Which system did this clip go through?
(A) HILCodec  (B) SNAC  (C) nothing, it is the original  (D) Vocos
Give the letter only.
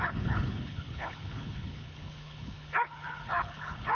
A